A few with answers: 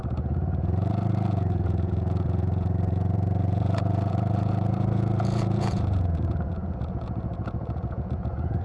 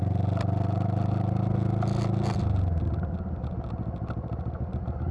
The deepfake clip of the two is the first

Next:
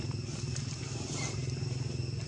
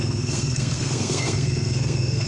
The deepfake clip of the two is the second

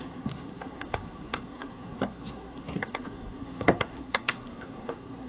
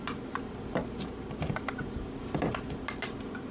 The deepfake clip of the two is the first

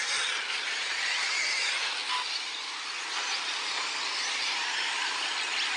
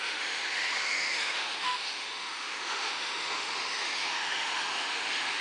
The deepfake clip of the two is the second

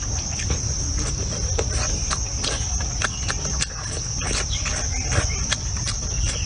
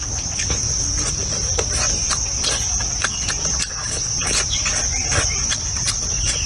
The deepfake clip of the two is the first